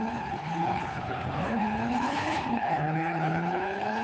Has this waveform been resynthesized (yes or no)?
yes